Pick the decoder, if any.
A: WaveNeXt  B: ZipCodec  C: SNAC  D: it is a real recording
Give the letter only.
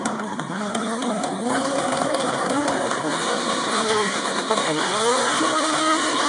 C